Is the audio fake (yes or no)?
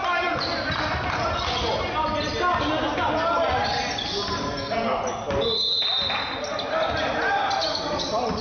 no